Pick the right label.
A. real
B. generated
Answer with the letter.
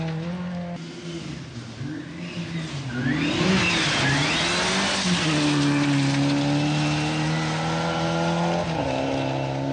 A